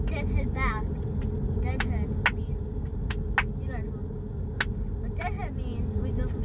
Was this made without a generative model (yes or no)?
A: yes